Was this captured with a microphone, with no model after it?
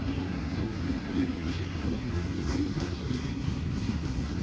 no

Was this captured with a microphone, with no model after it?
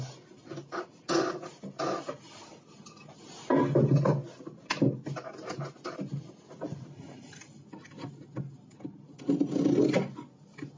yes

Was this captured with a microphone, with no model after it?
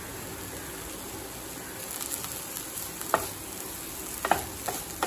yes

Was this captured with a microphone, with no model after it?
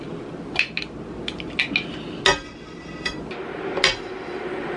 yes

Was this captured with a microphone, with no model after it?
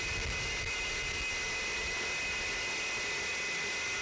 yes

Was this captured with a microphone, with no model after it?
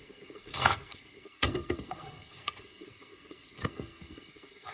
no